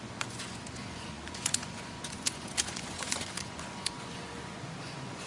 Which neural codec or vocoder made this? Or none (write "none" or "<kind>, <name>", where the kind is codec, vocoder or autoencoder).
vocoder, Vocos